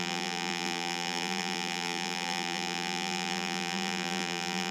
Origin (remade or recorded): remade